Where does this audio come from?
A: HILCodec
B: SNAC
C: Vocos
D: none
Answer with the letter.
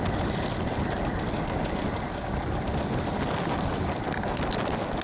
D